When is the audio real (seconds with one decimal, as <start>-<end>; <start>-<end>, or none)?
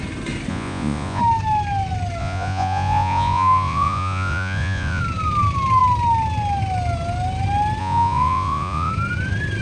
0.0-0.5; 1.2-2.2; 5.0-7.8; 8.9-9.6